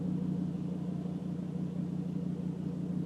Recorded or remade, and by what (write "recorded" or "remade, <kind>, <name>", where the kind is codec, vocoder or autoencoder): recorded